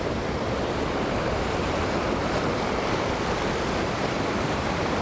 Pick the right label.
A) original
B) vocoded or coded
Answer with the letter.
B